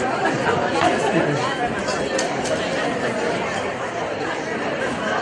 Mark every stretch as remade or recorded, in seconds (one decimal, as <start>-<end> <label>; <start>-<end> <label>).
0.0-5.2 recorded